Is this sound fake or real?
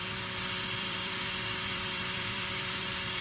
fake